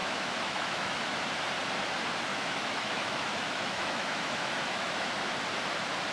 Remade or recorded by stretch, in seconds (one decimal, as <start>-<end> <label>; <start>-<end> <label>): 0.0-1.0 remade; 1.0-2.3 recorded; 2.3-5.1 remade; 5.1-6.1 recorded